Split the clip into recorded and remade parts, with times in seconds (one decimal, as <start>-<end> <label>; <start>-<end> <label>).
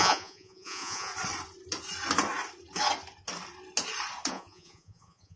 0.0-1.1 remade; 1.1-4.3 recorded; 4.3-5.4 remade